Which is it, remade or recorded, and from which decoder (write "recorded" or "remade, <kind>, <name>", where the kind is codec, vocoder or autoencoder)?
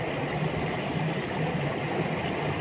recorded